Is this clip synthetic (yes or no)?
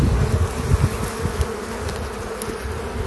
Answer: no